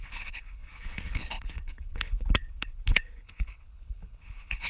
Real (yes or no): no